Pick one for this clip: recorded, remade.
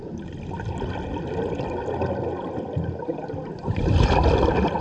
recorded